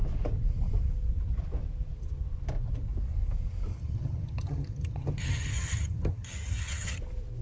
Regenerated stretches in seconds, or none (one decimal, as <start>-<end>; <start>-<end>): 3.7-7.0